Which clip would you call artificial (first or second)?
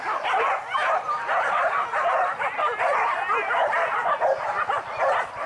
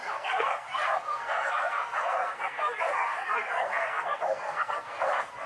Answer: second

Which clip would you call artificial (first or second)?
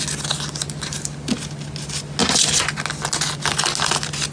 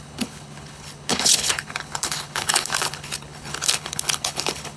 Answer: second